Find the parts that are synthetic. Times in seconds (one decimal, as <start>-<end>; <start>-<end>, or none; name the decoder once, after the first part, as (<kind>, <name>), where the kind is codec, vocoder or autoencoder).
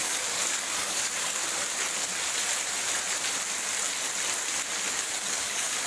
0.0-1.4 (codec, DAC); 4.9-5.9